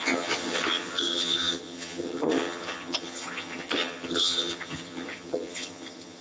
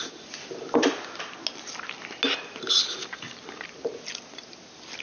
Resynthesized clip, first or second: first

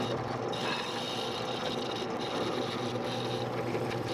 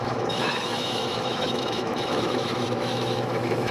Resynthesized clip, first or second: second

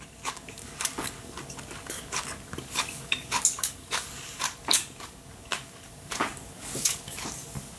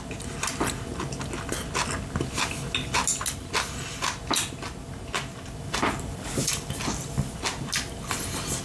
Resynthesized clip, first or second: first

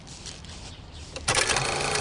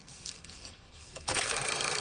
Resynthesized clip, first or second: second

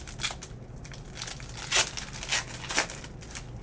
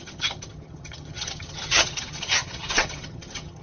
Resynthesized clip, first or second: second